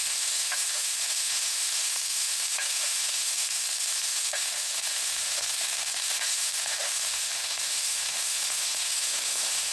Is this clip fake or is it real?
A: fake